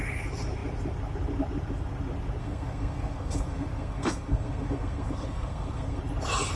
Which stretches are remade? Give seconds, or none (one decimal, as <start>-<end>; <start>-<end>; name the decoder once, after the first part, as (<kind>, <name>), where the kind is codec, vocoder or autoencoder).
2.4-6.0 (codec, SNAC)

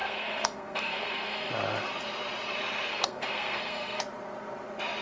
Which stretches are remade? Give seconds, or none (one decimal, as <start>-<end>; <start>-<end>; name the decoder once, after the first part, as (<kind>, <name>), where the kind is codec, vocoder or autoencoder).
0.0-1.5 (codec, SNAC); 2.9-4.0

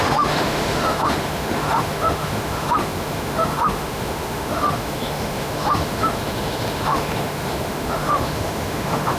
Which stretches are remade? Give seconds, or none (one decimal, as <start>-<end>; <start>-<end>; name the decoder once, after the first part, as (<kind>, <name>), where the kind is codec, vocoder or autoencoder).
0.0-9.2 (autoencoder, DAC-VAE)

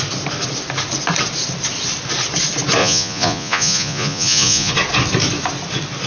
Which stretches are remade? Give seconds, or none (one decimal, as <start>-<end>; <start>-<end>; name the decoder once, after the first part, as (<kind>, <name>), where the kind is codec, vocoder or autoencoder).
2.8-4.7 (vocoder, Vocos)